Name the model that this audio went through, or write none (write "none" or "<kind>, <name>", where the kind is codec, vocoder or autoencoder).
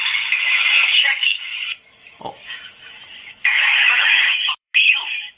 autoencoder, DAC-VAE